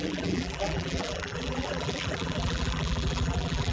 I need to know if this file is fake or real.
fake